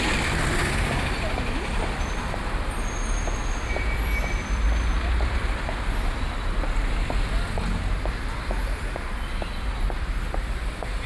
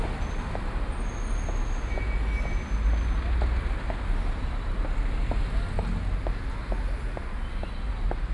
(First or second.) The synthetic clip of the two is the first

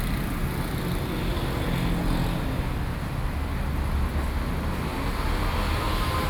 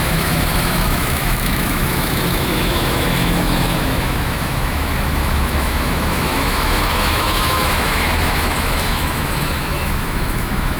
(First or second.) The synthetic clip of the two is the second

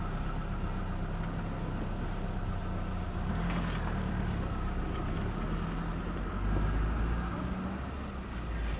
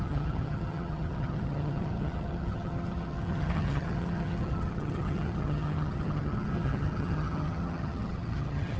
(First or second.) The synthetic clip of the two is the second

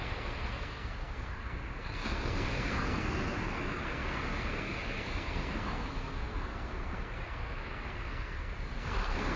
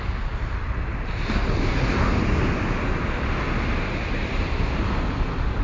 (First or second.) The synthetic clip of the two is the first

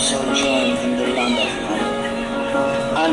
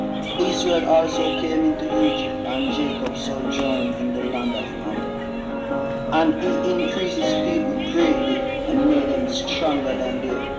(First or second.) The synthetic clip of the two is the first